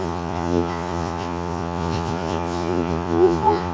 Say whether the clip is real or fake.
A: fake